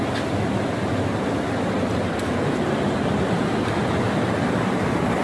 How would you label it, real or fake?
real